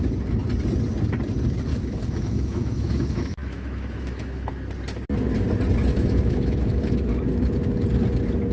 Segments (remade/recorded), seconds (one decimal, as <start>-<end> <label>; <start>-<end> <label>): 0.0-1.7 recorded; 1.7-4.5 remade; 4.5-5.9 recorded; 5.9-7.1 remade; 7.1-8.5 recorded